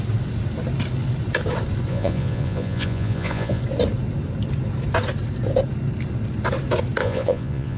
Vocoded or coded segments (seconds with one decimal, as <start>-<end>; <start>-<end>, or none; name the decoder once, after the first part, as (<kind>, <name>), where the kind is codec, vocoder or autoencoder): 1.9-3.6 (vocoder, Vocos); 7.0-7.8